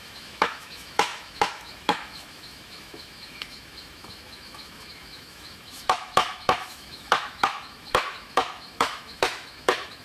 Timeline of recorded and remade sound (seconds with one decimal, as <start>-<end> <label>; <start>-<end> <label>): 0.0-10.0 remade